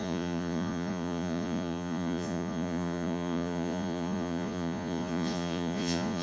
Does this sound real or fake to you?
fake